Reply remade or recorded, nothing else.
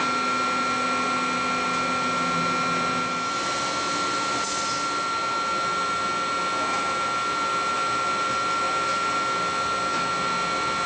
recorded